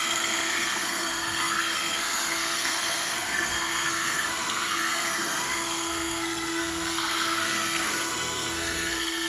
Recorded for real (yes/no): no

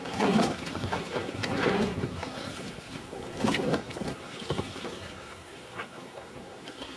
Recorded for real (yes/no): no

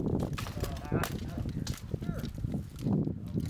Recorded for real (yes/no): yes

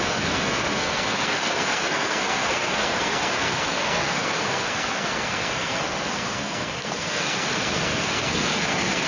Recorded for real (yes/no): no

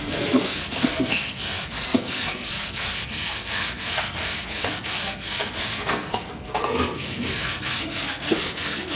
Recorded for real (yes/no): no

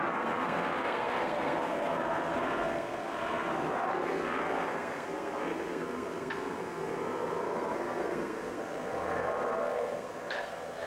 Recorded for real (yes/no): no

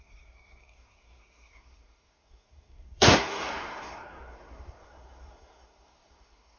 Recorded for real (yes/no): no